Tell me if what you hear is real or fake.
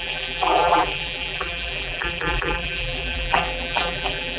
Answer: fake